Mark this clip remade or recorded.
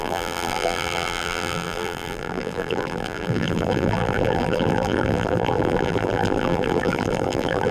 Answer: remade